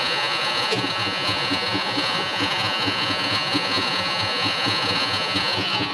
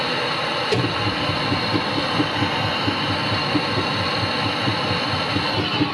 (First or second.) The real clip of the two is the second